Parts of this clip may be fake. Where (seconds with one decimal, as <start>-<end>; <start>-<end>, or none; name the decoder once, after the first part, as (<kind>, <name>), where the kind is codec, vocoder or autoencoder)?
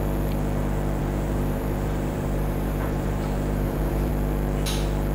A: 1.0-4.1 (vocoder, BigVGAN v2)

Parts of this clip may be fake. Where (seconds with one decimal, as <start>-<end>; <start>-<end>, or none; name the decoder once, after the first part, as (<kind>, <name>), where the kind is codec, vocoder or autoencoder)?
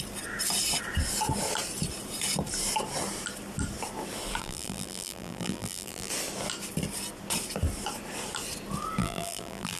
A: 4.4-6.1 (vocoder, BigVGAN v2); 9.0-9.8